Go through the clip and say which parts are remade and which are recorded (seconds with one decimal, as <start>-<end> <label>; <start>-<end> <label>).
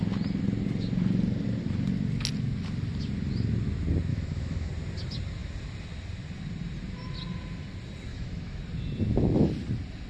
0.0-4.1 recorded; 4.1-4.7 remade; 4.7-8.1 recorded; 8.1-8.6 remade; 8.6-10.1 recorded